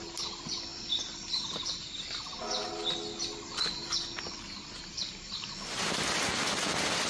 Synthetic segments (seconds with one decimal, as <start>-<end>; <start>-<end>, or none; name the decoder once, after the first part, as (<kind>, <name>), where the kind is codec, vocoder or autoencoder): 0.7-1.4 (vocoder, BigVGAN v2)